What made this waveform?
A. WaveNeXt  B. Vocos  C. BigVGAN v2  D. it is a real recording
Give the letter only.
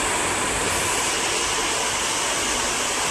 D